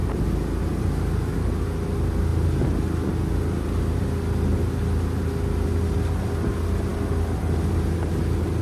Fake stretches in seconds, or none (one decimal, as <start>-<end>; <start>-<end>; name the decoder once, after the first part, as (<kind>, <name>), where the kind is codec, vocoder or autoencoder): none